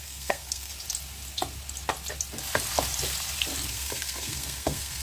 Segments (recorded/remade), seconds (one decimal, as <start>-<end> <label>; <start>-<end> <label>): 0.0-0.7 remade; 0.7-3.7 recorded; 3.7-5.0 remade